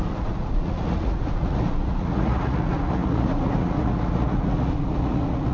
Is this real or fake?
fake